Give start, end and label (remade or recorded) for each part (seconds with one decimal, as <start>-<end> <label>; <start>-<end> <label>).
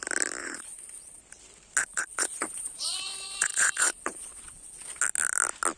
0.0-0.4 recorded; 0.4-1.2 remade; 1.2-1.8 recorded; 1.8-5.0 remade; 5.0-5.8 recorded